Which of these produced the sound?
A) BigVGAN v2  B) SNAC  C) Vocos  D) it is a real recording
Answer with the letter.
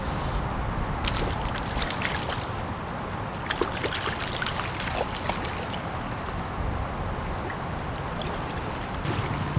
D